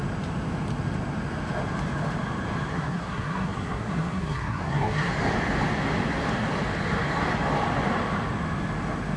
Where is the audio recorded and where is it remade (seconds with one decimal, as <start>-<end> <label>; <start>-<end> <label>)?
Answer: 0.0-2.7 recorded; 2.7-5.1 remade; 5.1-9.2 recorded